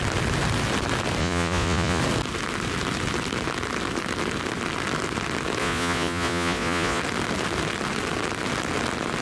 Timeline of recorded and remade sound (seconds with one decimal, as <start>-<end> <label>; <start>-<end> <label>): 0.0-1.2 recorded; 1.2-2.0 remade; 2.0-5.6 recorded; 5.6-7.0 remade; 7.0-9.2 recorded